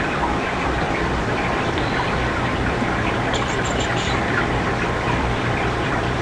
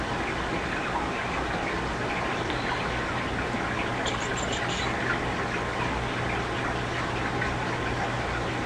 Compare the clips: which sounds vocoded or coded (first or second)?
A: first